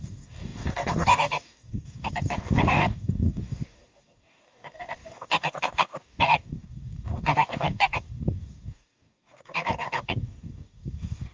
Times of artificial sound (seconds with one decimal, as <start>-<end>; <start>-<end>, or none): 0.0-11.3

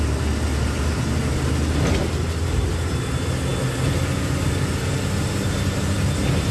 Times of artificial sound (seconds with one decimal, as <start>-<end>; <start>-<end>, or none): none

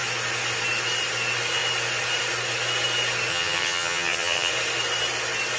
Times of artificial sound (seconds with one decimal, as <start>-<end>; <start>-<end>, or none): 3.3-4.5

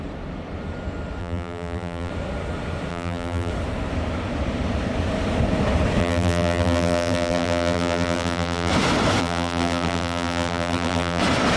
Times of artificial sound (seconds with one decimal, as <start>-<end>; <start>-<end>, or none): 1.2-2.1; 2.9-3.5; 6.0-8.7; 9.2-11.2